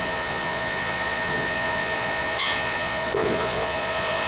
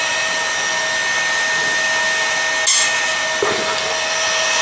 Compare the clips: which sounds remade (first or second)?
first